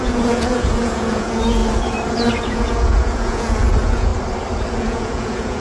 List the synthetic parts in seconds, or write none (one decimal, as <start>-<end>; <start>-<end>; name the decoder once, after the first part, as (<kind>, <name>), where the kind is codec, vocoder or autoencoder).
0.0-1.6 (vocoder, Vocos); 2.3-4.1; 4.7-5.6